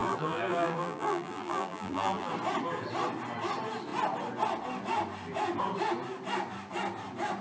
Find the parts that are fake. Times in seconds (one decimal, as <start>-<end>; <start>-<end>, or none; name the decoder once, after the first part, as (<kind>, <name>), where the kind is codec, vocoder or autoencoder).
0.0-2.3 (vocoder, BigVGAN v2)